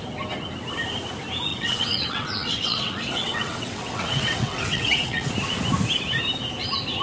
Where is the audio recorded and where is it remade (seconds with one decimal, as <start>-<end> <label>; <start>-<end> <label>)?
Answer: 0.0-1.5 recorded; 1.5-5.3 remade; 5.3-7.0 recorded